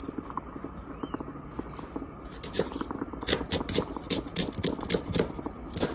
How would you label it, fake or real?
real